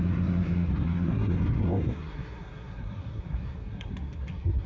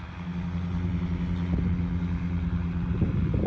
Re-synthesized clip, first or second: first